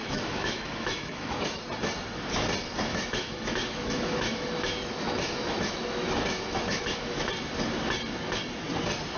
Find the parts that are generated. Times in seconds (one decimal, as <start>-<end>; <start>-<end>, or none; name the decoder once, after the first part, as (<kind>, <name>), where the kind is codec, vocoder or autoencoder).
0.0-1.6 (autoencoder, DAC-VAE); 2.9-7.3